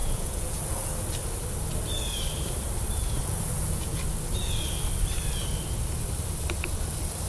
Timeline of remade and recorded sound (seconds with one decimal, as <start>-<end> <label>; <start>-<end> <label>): 0.0-0.9 remade; 0.9-3.0 recorded; 3.0-4.0 remade; 4.0-7.3 recorded